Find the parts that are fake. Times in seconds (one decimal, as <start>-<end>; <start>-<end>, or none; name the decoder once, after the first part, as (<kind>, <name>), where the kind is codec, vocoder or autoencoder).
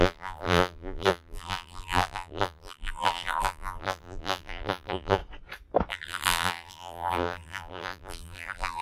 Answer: 0.0-5.2 (vocoder, BigVGAN v2); 5.9-8.8